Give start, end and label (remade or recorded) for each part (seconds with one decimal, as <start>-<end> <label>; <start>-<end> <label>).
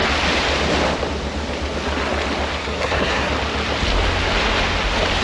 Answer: 0.0-2.6 recorded; 2.6-3.3 remade; 3.3-5.2 recorded